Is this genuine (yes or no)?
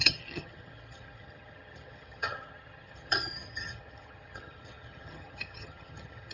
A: no